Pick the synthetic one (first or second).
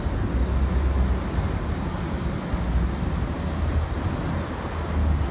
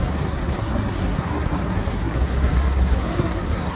second